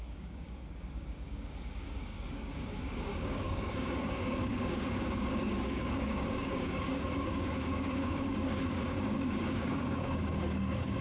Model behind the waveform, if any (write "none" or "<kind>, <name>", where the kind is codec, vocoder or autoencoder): codec, DAC